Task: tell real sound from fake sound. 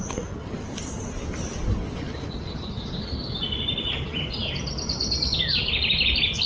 real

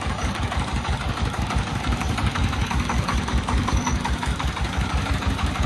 fake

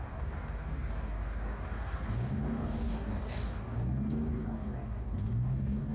fake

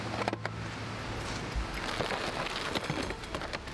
real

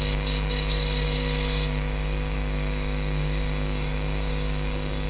fake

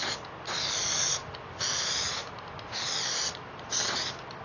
real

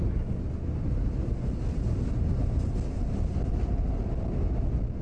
real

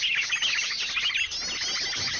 real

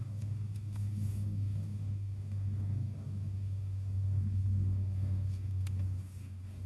fake